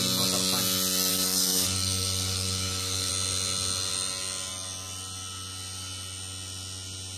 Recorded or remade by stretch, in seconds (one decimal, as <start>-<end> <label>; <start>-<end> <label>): 0.0-1.1 recorded; 1.1-3.1 remade; 3.1-7.2 recorded